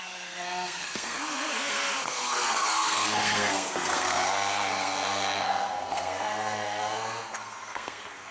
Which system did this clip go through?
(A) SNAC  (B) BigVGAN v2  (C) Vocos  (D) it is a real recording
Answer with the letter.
A